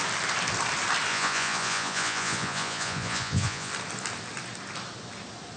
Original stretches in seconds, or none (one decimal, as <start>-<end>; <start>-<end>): 0.0-1.1; 3.7-5.6